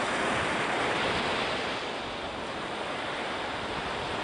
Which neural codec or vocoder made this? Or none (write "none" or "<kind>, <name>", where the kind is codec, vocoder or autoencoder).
none